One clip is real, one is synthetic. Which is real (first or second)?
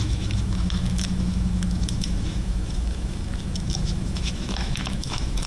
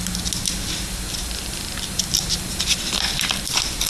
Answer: second